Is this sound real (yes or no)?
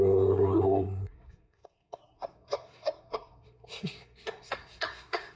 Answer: no